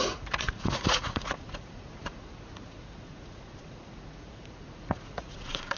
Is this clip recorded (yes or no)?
no